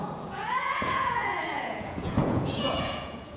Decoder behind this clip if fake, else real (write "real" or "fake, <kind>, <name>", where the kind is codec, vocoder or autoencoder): fake, vocoder, Vocos